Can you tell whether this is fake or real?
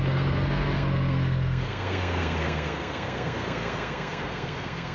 fake